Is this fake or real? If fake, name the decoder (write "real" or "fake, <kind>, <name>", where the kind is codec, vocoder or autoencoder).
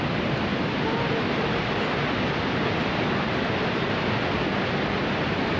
real